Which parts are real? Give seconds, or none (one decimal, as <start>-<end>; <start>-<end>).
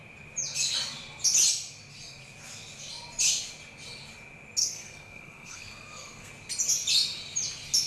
0.0-4.6; 6.3-7.9